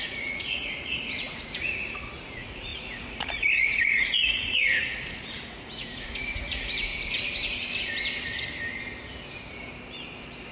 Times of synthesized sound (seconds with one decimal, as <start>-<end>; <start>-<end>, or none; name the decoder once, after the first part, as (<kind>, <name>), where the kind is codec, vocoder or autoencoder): 0.0-6.9 (vocoder, Vocos)